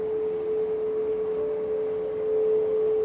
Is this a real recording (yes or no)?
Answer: yes